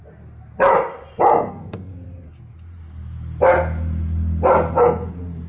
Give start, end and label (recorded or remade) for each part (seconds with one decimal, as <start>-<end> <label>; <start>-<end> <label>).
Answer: 0.0-1.5 recorded; 1.5-1.9 remade; 1.9-5.5 recorded